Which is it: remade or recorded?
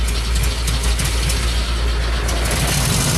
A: recorded